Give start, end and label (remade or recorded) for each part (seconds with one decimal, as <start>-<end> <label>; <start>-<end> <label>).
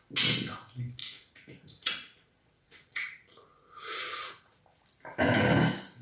0.0-1.0 recorded; 1.0-4.6 remade; 4.6-6.0 recorded